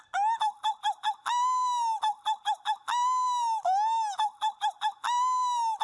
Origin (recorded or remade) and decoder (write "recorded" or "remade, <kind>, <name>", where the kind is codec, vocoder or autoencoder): recorded